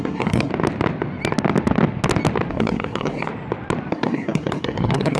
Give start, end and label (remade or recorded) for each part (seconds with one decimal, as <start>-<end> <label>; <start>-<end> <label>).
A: 0.0-0.5 remade; 0.5-2.5 recorded; 2.5-3.3 remade; 3.3-3.9 recorded; 3.9-5.2 remade